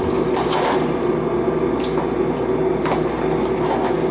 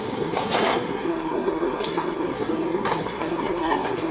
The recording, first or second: first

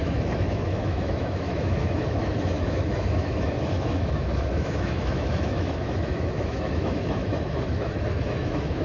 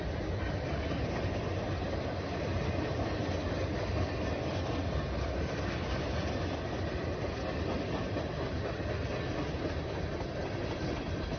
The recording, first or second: second